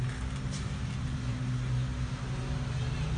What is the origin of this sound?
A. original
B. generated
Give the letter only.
A